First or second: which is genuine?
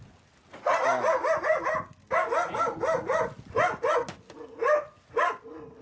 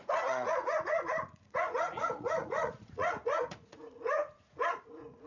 first